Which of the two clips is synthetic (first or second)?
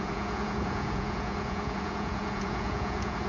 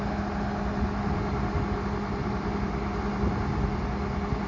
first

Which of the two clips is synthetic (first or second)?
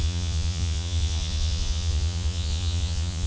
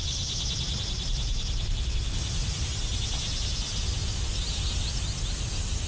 first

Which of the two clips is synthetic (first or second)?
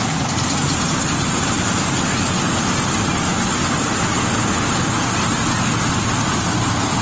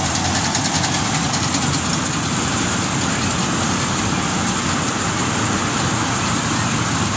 second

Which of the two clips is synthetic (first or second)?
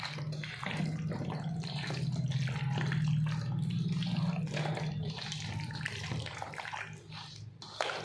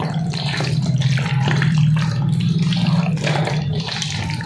second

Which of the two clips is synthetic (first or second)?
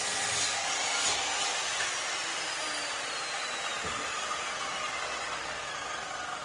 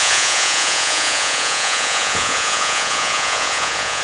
second